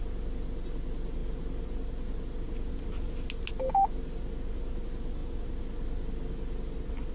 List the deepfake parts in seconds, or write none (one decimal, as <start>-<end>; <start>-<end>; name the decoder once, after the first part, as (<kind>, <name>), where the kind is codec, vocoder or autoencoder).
none

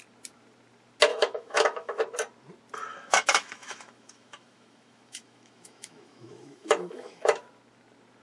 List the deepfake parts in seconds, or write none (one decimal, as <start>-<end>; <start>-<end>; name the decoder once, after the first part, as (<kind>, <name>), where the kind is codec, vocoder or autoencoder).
1.1-2.0 (autoencoder, DAC-VAE); 2.9-7.4

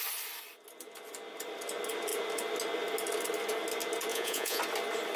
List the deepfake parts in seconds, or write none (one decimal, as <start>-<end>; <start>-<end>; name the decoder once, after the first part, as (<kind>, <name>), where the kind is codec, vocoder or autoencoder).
4.1-4.6 (vocoder, Vocos)

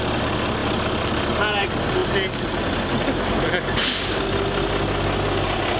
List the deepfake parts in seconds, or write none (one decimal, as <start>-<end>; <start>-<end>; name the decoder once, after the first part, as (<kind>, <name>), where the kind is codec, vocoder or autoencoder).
none

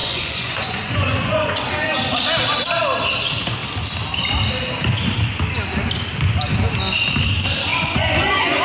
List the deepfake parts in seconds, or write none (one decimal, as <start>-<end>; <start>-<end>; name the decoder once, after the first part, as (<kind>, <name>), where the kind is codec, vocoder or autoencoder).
0.0-1.7 (vocoder, Vocos); 7.7-8.6

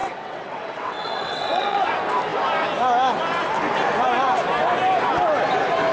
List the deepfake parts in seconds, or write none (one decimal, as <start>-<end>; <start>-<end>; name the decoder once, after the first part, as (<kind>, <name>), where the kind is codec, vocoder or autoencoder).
0.0-1.9 (vocoder, WaveNeXt)

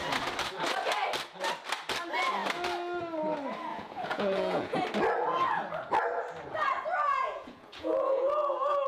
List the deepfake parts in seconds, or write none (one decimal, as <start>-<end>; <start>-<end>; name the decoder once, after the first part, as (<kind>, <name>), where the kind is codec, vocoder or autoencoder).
3.7-4.8 (vocoder, Vocos); 7.1-8.9

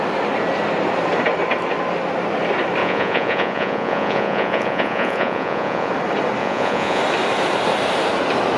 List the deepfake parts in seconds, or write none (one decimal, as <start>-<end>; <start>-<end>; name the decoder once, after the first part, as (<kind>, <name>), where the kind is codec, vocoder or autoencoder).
2.8-5.9 (vocoder, Vocos); 6.4-7.0